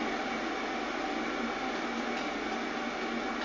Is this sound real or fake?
real